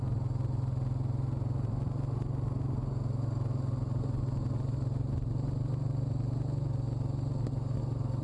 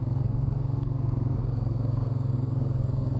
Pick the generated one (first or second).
second